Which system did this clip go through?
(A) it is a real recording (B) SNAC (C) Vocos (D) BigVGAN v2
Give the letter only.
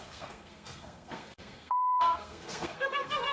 B